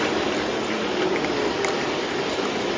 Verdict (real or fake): real